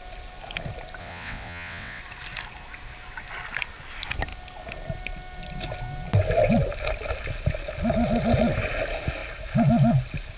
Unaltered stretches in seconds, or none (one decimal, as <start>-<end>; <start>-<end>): 0.0-1.0; 2.0-10.4